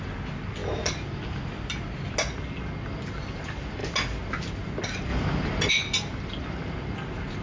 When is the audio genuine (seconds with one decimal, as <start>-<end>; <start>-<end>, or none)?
0.0-7.4